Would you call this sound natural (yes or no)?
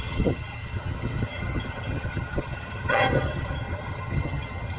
no